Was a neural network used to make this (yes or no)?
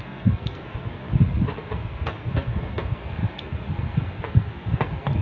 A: yes